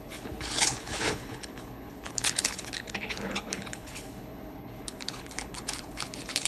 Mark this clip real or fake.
fake